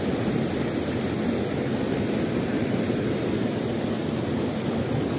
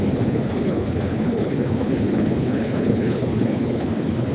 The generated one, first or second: second